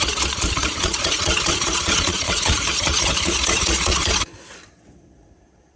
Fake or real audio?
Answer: fake